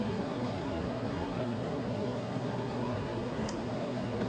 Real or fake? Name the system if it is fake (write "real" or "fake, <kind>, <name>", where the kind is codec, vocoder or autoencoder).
fake, codec, SNAC